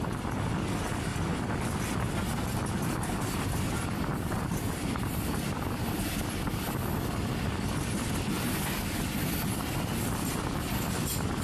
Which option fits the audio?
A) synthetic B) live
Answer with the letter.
B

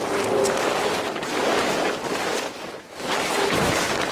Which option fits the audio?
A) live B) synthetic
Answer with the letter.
A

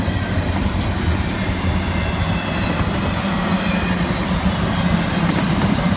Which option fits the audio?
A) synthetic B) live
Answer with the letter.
B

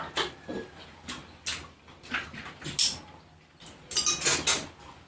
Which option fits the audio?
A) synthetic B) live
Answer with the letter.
B